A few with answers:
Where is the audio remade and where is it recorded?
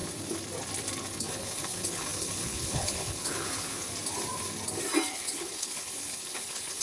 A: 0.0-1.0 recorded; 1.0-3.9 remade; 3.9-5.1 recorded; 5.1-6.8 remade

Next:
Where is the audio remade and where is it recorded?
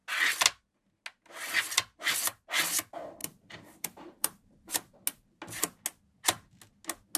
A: 0.0-3.2 recorded; 3.2-4.7 remade; 4.7-7.2 recorded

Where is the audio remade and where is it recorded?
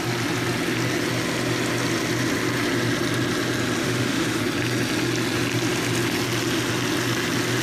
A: 0.0-3.8 recorded; 3.8-4.4 remade; 4.4-7.6 recorded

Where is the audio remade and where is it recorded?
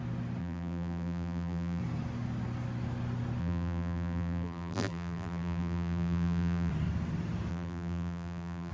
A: 0.0-0.4 recorded; 0.4-1.8 remade; 1.8-3.4 recorded; 3.4-6.7 remade; 6.7-7.5 recorded; 7.5-8.7 remade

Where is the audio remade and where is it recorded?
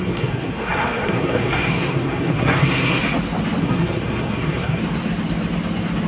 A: 0.0-3.0 remade; 3.0-3.6 recorded; 3.6-4.8 remade; 4.8-6.1 recorded